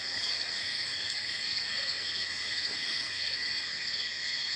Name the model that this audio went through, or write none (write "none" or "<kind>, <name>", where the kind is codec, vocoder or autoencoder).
codec, SNAC